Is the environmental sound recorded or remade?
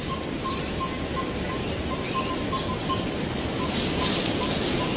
recorded